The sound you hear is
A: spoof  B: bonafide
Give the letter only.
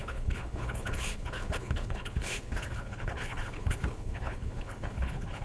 A